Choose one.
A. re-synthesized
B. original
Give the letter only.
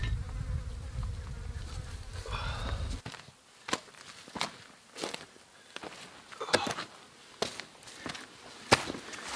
B